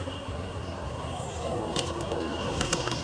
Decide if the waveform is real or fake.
fake